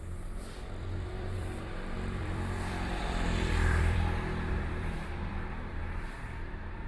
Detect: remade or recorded remade